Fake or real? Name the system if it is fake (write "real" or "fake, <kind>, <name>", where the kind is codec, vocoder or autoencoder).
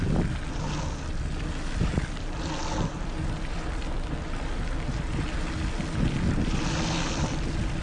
real